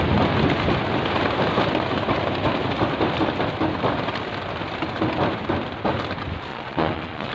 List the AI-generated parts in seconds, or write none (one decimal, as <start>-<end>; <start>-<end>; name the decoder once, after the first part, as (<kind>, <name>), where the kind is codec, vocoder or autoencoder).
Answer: 6.5-7.3 (vocoder, Vocos)